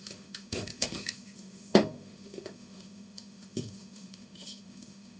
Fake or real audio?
fake